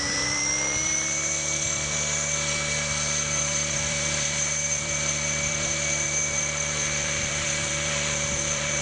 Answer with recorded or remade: remade